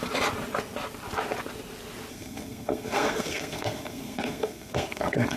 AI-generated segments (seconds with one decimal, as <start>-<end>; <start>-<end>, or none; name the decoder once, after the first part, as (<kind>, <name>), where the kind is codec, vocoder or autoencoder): 2.1-5.4 (codec, SNAC)